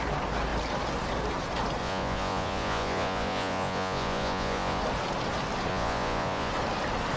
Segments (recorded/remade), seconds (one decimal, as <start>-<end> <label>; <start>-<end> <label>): 0.0-1.8 recorded; 1.8-4.8 remade; 4.8-5.7 recorded; 5.7-6.5 remade; 6.5-7.2 recorded